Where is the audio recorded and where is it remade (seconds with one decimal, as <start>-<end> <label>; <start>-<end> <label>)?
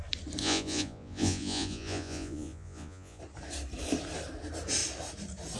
0.0-0.4 recorded; 0.4-3.2 remade; 3.2-5.6 recorded